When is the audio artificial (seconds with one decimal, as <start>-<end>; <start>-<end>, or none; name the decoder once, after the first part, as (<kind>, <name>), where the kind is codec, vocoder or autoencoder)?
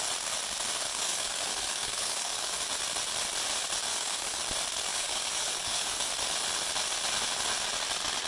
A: 0.9-2.6 (codec, DAC); 3.9-4.4; 4.9-6.1